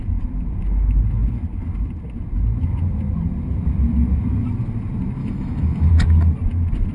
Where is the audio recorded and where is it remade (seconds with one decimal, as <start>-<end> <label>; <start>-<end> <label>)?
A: 0.0-5.2 recorded; 5.2-5.9 remade; 5.9-6.9 recorded